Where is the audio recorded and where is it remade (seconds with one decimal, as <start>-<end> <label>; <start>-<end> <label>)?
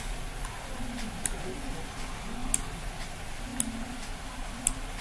0.0-5.0 recorded